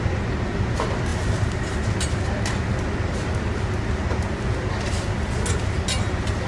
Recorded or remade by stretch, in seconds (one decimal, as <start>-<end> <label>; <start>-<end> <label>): 0.0-6.5 recorded